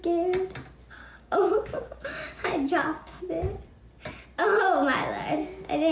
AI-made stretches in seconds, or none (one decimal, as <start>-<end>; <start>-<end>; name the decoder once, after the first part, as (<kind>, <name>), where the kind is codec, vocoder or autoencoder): 1.0-3.2 (codec, DAC)